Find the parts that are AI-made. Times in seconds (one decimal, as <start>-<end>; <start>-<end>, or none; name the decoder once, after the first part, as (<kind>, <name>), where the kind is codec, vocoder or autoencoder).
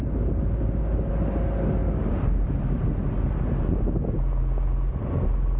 none